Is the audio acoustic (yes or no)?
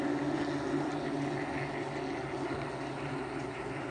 yes